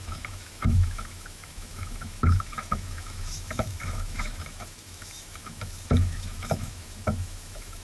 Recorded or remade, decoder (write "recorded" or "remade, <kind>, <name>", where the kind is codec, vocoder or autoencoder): remade, autoencoder, DAC-VAE